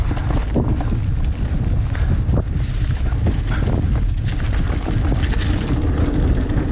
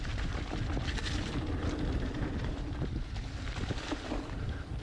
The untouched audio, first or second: first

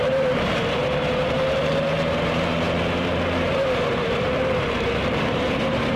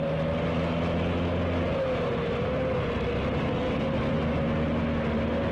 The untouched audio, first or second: second